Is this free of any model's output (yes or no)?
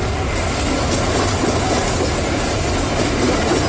yes